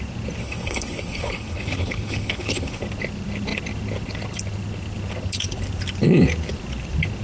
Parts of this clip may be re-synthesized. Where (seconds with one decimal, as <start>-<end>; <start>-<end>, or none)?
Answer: 0.4-2.8